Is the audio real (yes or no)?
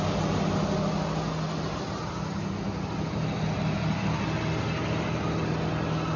yes